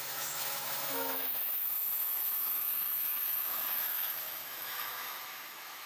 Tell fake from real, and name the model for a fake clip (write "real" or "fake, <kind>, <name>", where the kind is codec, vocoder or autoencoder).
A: fake, autoencoder, DAC-VAE